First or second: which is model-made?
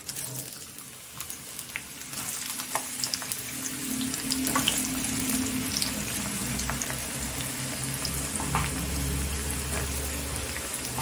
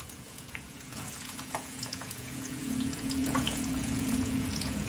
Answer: second